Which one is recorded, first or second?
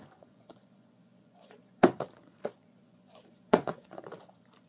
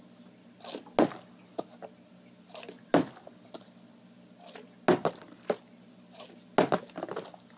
second